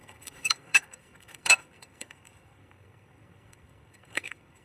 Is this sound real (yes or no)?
no